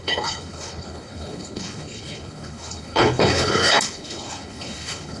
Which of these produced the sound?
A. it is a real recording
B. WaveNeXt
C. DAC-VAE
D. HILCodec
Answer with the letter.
D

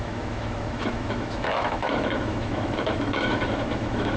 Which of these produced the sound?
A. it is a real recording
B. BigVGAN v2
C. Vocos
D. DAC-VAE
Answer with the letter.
D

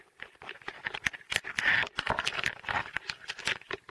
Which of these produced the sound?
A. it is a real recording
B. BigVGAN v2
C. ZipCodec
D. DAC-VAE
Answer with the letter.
B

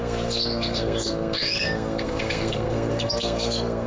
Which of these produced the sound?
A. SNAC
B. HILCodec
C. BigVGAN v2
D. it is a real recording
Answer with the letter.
A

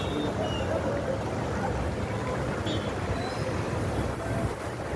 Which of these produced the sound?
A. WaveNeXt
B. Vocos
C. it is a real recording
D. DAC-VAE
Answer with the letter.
C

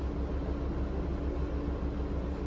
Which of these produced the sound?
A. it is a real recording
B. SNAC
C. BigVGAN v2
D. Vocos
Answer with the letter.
A